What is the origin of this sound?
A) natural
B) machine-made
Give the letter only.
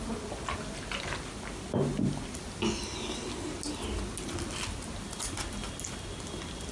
A